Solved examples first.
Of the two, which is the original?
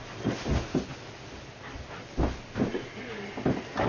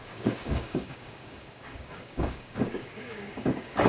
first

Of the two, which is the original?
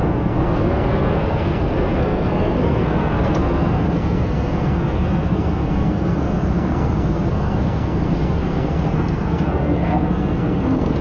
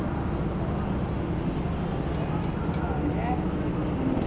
second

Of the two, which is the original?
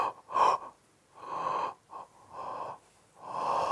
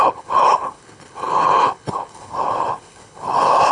first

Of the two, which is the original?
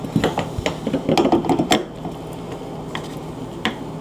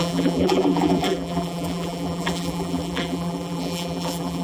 first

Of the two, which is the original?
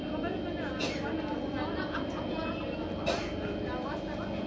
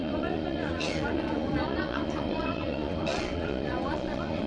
first